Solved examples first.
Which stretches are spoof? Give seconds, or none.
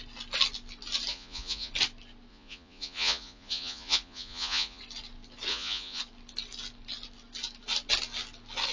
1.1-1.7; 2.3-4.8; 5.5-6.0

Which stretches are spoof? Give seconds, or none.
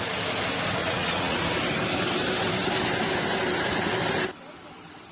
0.8-1.4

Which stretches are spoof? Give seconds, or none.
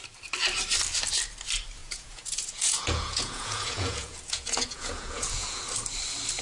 1.8-5.6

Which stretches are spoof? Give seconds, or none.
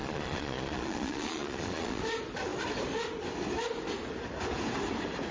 0.0-2.0